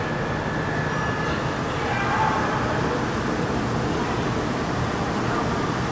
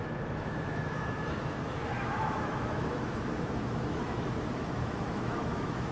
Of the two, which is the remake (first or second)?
second